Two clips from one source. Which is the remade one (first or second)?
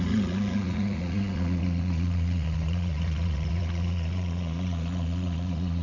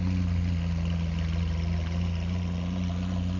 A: first